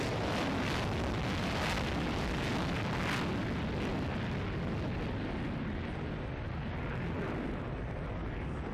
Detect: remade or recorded recorded